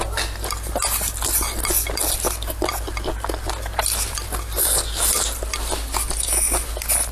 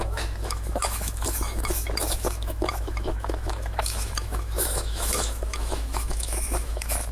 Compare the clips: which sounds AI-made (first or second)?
second